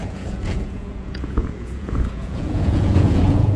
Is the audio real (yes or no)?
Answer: no